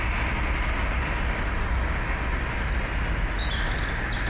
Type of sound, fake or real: real